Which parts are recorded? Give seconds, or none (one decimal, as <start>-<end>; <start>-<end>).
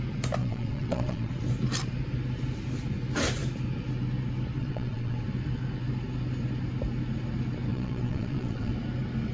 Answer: 0.0-0.4; 1.3-4.6; 5.2-7.7; 8.7-9.3